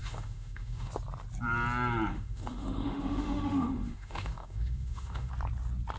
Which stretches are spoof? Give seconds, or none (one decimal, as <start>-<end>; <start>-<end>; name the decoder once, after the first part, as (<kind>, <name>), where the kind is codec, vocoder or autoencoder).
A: 0.0-0.9 (autoencoder, DAC-VAE); 2.1-5.3